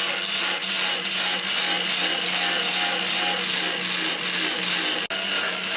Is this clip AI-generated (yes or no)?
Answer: no